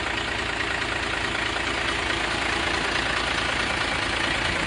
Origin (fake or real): real